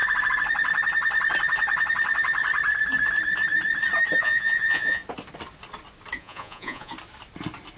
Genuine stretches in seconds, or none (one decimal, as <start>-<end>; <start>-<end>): 0.0-4.2; 5.0-6.2; 6.9-7.8